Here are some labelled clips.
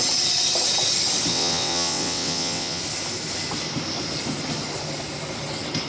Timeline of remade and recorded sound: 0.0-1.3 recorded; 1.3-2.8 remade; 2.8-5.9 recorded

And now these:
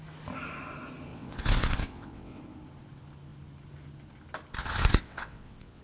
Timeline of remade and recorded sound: 0.0-1.1 recorded; 1.1-2.4 remade; 2.4-4.6 recorded; 4.6-5.8 remade

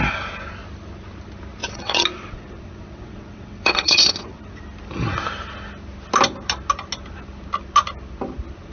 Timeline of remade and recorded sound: 0.0-1.6 recorded; 1.6-4.6 remade; 4.6-8.7 recorded

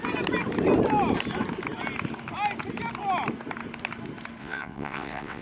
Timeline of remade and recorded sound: 0.0-4.4 recorded; 4.4-5.4 remade

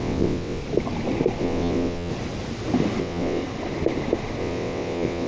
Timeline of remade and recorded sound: 0.0-0.6 remade; 0.6-1.4 recorded; 1.4-2.1 remade; 2.1-3.0 recorded; 3.0-3.4 remade; 3.4-4.4 recorded; 4.4-5.3 remade